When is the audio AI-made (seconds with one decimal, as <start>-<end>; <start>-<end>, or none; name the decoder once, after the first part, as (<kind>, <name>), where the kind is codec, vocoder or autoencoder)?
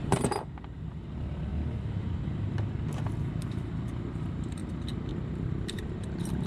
0.0-1.5 (vocoder, BigVGAN v2); 4.0-4.6; 5.1-6.5